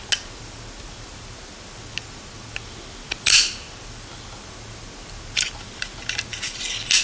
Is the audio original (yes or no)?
yes